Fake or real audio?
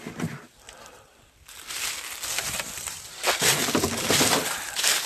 fake